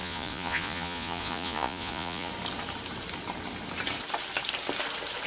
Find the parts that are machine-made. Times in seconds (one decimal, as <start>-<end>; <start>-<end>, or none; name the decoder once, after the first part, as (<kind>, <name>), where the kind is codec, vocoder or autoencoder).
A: 0.0-2.3 (vocoder, Vocos)